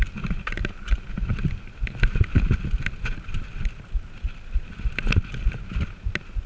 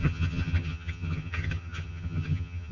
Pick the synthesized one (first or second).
second